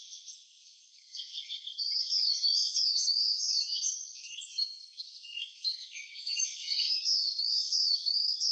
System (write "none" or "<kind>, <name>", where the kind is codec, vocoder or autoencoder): codec, SNAC